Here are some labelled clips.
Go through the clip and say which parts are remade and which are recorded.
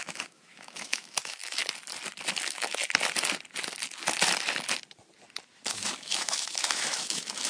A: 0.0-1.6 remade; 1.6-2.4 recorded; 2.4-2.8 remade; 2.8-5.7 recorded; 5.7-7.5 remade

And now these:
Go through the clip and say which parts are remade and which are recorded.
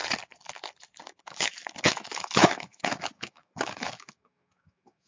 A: 0.0-1.2 recorded; 1.2-5.1 remade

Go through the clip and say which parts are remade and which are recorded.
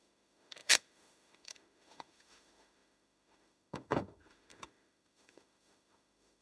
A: 0.0-6.4 remade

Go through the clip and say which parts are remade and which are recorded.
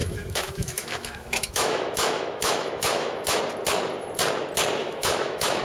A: 0.0-3.4 remade; 3.4-4.8 recorded; 4.8-5.6 remade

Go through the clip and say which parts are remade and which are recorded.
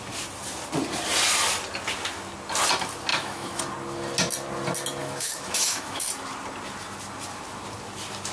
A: 0.0-3.1 recorded; 3.1-3.6 remade; 3.6-5.0 recorded; 5.0-6.1 remade; 6.1-8.3 recorded